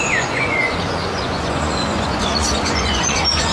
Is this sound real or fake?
fake